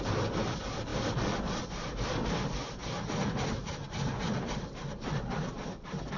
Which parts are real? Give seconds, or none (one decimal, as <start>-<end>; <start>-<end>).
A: 0.0-6.2